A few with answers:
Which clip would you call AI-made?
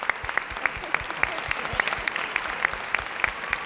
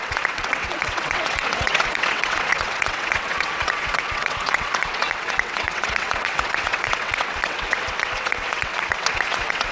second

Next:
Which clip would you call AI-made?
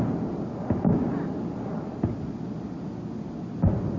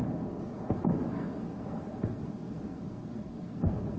second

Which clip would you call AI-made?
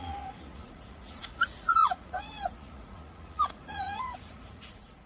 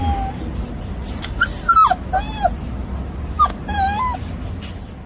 first